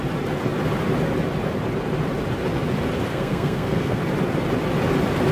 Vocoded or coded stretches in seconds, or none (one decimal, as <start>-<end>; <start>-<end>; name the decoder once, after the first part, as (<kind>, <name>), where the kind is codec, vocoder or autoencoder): 3.1-4.0 (codec, SNAC)